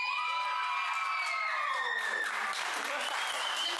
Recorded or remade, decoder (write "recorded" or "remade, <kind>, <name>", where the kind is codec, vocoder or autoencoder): recorded